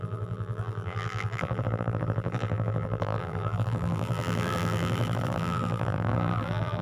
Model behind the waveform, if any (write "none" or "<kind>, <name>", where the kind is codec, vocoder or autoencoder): vocoder, BigVGAN v2